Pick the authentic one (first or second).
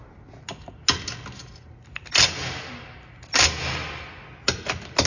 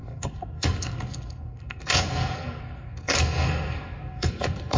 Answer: first